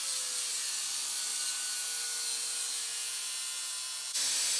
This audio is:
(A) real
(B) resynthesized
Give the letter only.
A